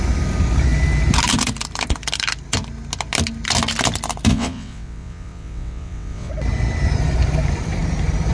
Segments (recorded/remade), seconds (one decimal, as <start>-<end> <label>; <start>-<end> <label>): 0.0-4.3 recorded; 4.3-6.3 remade; 6.3-8.3 recorded